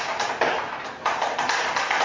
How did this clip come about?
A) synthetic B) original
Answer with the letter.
B